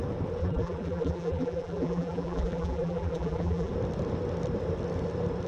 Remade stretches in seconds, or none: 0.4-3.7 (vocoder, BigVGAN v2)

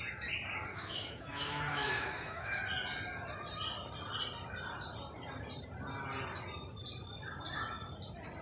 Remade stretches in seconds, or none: 0.7-2.6 (autoencoder, DAC-VAE)

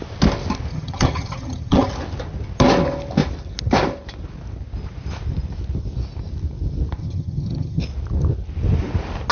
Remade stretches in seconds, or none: 0.7-1.9 (vocoder, HiFi-GAN); 7.0-7.8

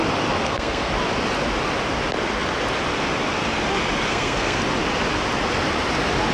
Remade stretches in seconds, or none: 0.4-0.9 (codec, SNAC); 4.1-4.6

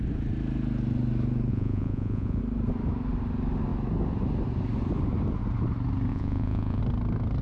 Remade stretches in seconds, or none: 1.5-2.4 (vocoder, Vocos); 6.1-6.8